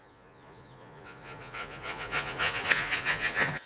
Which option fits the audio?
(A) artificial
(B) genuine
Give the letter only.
A